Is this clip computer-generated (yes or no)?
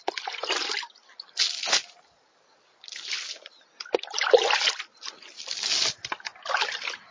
no